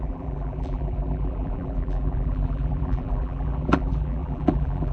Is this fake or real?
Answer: fake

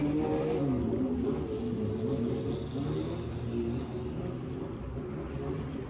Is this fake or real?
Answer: real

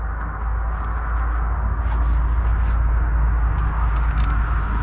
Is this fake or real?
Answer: real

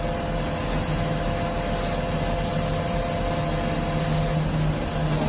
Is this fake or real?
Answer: real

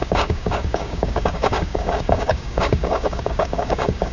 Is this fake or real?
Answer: fake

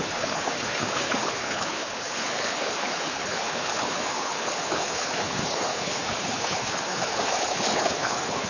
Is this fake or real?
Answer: fake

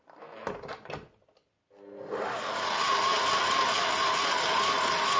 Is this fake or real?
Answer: real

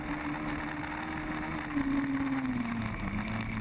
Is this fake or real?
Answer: real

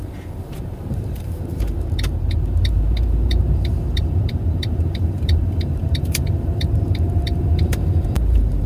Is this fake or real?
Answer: fake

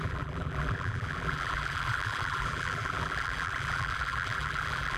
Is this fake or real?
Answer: fake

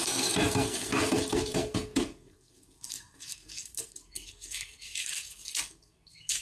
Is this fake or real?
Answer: fake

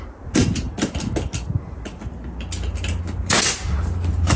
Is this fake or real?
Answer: real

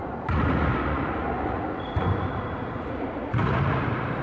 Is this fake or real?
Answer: fake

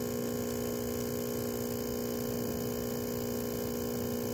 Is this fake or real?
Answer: real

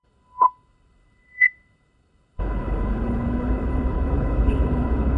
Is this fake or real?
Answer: fake